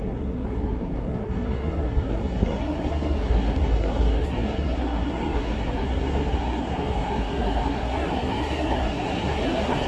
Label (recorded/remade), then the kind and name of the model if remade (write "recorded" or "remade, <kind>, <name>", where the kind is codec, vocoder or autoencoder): remade, codec, SNAC